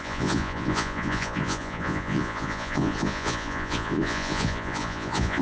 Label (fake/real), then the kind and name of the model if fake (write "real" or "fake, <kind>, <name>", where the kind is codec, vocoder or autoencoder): fake, vocoder, Vocos